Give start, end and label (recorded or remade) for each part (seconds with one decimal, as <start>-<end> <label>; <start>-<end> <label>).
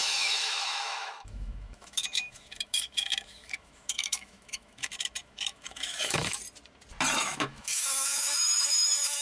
0.0-6.4 remade; 6.4-7.2 recorded; 7.2-9.2 remade